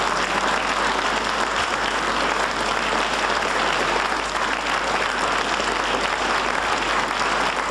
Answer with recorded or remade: recorded